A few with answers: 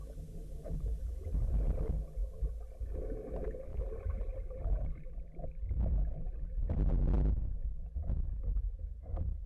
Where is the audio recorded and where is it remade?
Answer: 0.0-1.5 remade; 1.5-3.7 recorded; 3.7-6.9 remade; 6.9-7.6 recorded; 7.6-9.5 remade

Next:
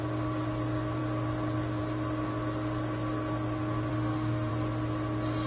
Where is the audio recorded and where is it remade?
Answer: 0.0-3.9 recorded; 3.9-4.5 remade; 4.5-5.5 recorded

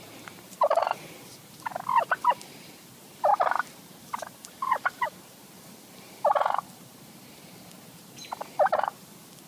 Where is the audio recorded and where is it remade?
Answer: 0.0-1.7 remade; 1.7-2.9 recorded; 2.9-9.5 remade

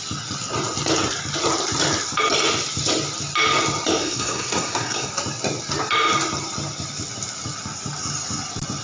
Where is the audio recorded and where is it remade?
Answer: 0.0-4.0 recorded; 4.0-5.1 remade; 5.1-8.8 recorded